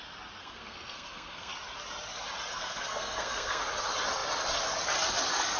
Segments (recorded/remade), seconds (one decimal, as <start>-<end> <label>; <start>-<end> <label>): 0.0-0.4 recorded; 0.4-1.5 remade; 1.5-2.5 recorded; 2.5-3.6 remade; 3.6-5.6 recorded

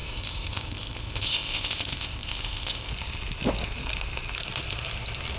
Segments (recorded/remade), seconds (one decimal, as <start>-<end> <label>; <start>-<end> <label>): 0.0-2.9 remade; 2.9-5.4 recorded